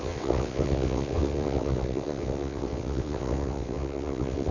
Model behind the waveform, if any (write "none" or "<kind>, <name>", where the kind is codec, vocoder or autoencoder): vocoder, WaveNeXt